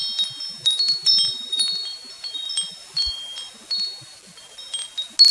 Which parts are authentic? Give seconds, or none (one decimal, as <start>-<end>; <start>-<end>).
0.0-1.1; 2.3-2.8; 3.5-5.3